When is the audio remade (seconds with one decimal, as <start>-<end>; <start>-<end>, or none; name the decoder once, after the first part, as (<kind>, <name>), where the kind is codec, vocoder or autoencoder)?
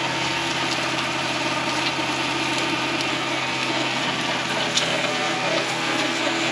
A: 0.0-0.5 (codec, SNAC); 3.1-4.0; 4.7-6.5